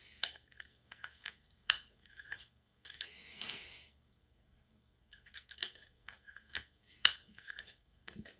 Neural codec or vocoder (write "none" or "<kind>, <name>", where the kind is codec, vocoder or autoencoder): codec, SNAC